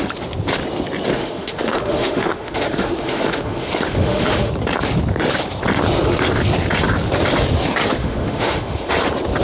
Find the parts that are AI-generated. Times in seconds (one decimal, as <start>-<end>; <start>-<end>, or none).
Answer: 1.1-4.5; 8.0-8.9